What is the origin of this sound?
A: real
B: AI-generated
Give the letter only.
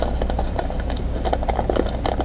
A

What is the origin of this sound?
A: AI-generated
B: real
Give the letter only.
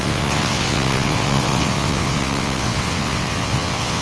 A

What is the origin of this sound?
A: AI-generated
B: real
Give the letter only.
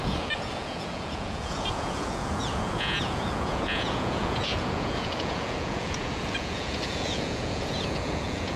A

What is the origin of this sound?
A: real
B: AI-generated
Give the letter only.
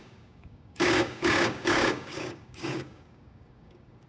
B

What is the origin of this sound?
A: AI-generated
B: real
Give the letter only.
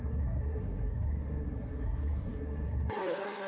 A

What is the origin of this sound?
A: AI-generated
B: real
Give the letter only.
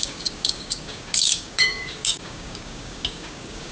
A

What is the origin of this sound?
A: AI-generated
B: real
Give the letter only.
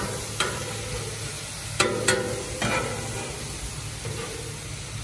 B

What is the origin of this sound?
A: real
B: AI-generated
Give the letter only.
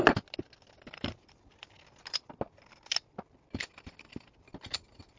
A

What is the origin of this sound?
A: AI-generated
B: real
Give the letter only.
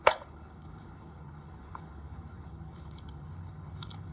A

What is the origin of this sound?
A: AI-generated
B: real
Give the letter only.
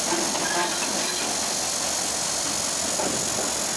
B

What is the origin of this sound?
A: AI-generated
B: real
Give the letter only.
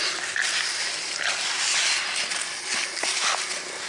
B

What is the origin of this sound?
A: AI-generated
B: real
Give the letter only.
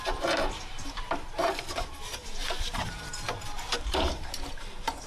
A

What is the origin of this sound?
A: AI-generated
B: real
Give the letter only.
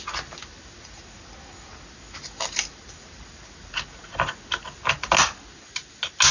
B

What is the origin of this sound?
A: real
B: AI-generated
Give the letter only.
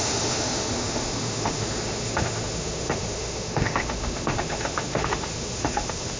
B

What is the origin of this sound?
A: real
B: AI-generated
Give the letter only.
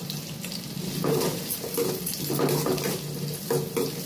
A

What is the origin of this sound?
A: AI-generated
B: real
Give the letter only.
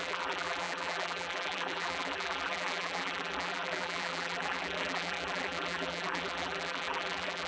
A